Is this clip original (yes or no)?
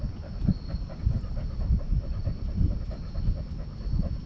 yes